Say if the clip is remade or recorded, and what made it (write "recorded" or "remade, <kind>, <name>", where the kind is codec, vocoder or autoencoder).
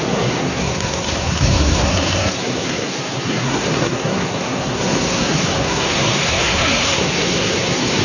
remade, codec, SNAC